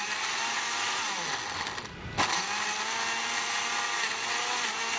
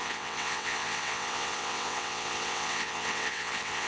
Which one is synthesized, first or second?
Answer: second